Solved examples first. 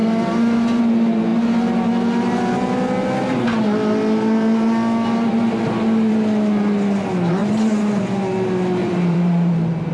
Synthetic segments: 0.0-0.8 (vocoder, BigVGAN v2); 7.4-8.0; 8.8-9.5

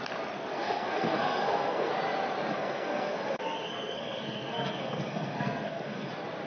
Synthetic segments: 0.5-1.9 (codec, SNAC); 2.5-6.1

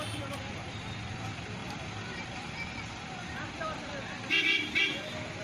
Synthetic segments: none

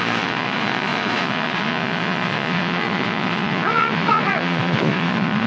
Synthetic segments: 0.0-5.5 (vocoder, Vocos)

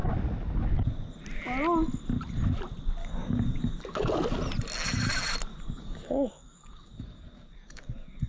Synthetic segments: 3.0-4.1 (codec, DAC); 5.5-8.3

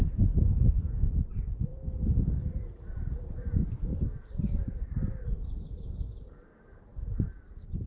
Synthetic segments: 0.0-1.7 (vocoder, BigVGAN v2); 3.2-3.9; 4.4-7.9

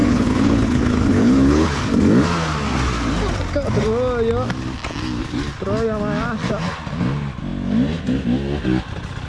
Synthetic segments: 0.0-1.8 (codec, HILCodec)

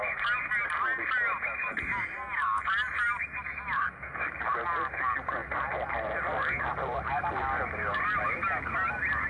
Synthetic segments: none